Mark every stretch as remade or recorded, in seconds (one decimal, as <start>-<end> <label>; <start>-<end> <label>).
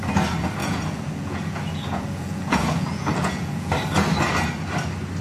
0.0-0.6 recorded; 0.6-3.7 remade; 3.7-5.2 recorded